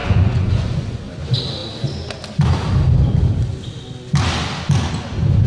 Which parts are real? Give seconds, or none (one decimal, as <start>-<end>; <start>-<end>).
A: 1.1-5.5